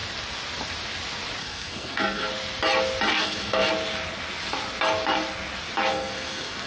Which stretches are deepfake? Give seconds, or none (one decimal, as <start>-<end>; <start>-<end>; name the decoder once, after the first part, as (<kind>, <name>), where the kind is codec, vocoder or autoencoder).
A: 1.4-2.3 (codec, SNAC); 3.1-3.7; 5.9-6.7